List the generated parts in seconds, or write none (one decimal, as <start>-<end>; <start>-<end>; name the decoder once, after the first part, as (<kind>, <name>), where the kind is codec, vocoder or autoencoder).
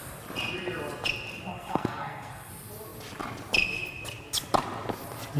1.5-2.5 (codec, SNAC)